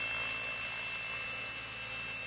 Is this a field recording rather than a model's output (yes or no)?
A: yes